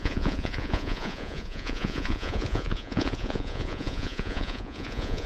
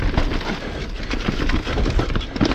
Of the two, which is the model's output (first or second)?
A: first